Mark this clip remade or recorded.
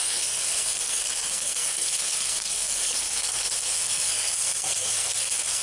remade